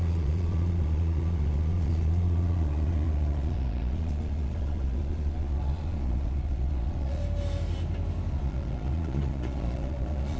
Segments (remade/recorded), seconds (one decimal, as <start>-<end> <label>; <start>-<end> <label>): 0.0-7.2 remade; 7.2-8.3 recorded; 8.3-10.4 remade